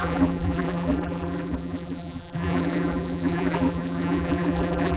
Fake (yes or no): yes